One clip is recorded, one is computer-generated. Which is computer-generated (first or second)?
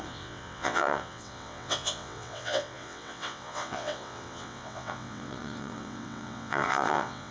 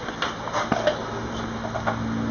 first